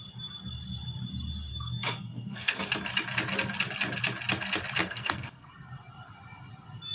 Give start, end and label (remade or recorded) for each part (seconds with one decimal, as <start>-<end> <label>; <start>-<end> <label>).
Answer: 0.0-1.5 recorded; 1.5-2.6 remade; 2.6-4.8 recorded; 4.8-5.5 remade; 5.5-6.9 recorded

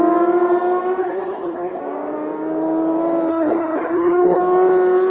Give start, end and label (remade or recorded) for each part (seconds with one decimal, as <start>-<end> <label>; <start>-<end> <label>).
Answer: 0.0-1.0 recorded; 1.0-1.8 remade; 1.8-3.3 recorded; 3.3-4.4 remade; 4.4-5.1 recorded

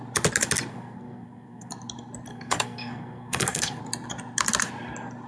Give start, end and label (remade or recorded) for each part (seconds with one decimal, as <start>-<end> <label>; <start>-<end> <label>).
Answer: 0.0-0.7 recorded; 0.7-1.7 remade; 1.7-2.3 recorded; 2.3-3.8 remade; 3.8-5.3 recorded

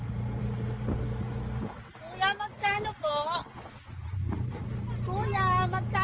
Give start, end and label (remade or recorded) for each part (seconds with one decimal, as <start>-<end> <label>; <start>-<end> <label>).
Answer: 0.0-6.0 recorded

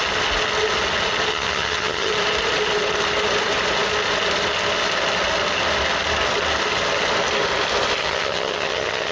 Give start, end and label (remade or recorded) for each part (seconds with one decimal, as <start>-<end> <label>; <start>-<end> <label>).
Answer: 0.0-1.3 recorded; 1.3-2.1 remade; 2.1-8.0 recorded; 8.0-9.1 remade

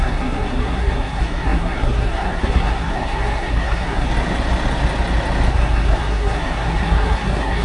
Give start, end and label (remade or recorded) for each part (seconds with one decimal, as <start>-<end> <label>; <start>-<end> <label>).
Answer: 0.0-4.1 remade; 4.1-5.5 recorded; 5.5-7.6 remade